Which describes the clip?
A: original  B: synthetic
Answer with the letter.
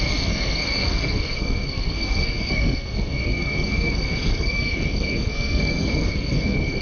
B